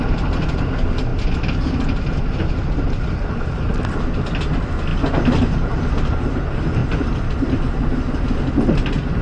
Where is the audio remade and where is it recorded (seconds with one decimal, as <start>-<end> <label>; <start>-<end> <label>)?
0.0-9.2 recorded

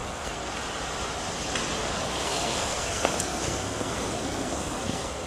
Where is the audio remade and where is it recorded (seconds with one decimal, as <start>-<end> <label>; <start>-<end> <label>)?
0.0-0.5 remade; 0.5-1.8 recorded; 1.8-5.3 remade

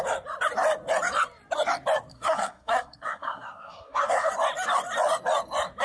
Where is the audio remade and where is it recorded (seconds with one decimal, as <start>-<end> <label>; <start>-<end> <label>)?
0.0-2.1 recorded; 2.1-4.3 remade; 4.3-5.8 recorded

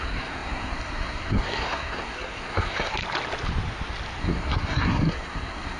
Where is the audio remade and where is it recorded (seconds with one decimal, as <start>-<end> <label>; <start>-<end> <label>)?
0.0-3.0 remade; 3.0-4.2 recorded; 4.2-5.8 remade

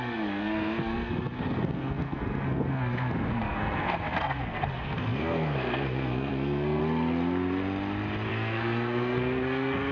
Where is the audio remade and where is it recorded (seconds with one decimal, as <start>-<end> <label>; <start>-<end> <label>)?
0.0-6.8 remade; 6.8-8.3 recorded; 8.3-9.9 remade

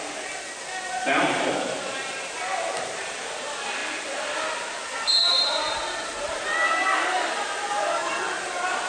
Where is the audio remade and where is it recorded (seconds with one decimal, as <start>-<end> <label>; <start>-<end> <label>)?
0.0-8.9 recorded

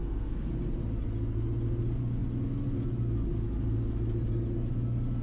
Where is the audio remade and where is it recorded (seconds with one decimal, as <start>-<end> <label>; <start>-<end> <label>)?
0.0-0.5 remade; 0.5-5.2 recorded

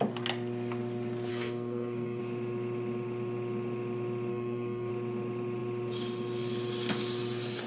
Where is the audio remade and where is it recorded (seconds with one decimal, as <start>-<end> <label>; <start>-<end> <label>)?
0.0-1.3 recorded; 1.3-2.2 remade; 2.2-4.3 recorded; 4.3-4.9 remade; 4.9-7.7 recorded